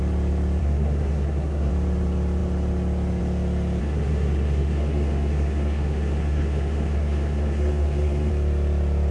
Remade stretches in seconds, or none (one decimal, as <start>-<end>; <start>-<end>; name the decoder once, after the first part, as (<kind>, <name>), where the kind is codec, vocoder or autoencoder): 0.6-1.7 (codec, SNAC); 3.8-8.3